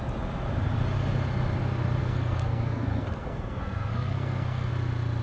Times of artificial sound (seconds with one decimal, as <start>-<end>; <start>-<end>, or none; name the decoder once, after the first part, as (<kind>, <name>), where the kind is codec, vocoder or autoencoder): 2.0-4.7 (codec, SNAC)